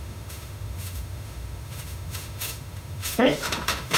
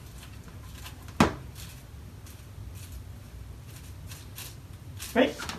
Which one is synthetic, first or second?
first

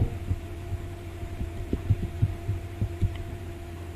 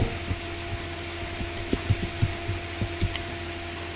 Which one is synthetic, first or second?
first